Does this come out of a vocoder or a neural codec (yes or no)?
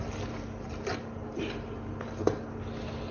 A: no